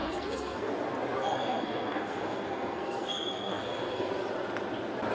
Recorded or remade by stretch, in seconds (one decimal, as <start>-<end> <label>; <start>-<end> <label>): 0.0-0.7 remade; 0.7-1.2 recorded; 1.2-4.1 remade; 4.1-5.1 recorded